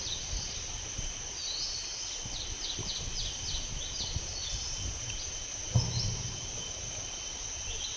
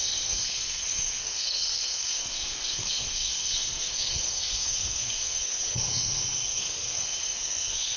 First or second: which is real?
first